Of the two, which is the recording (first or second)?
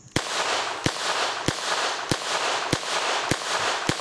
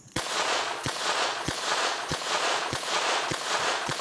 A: first